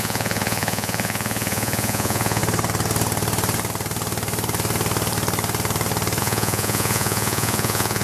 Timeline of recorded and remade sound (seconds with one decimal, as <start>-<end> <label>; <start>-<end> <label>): 0.0-2.4 remade; 2.4-6.2 recorded; 6.2-8.0 remade